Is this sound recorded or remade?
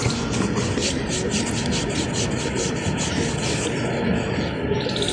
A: recorded